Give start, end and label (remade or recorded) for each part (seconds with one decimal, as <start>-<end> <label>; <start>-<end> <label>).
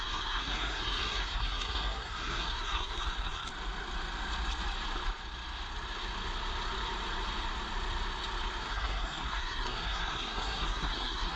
0.0-3.5 remade; 3.5-8.6 recorded; 8.6-11.4 remade